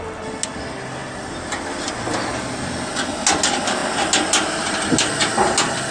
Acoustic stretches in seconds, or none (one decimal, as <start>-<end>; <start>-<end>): 0.0-5.9